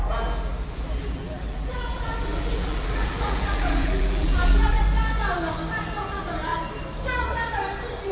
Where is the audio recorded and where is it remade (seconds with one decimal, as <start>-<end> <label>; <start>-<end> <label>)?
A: 0.0-1.0 recorded; 1.0-4.8 remade; 4.8-8.1 recorded